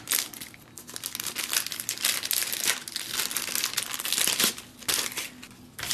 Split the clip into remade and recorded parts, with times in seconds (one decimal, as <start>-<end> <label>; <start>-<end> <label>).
0.0-5.9 recorded